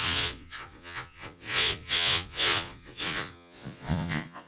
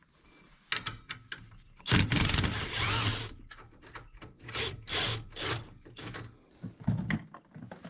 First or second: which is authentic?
second